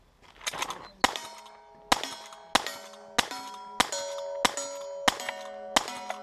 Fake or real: real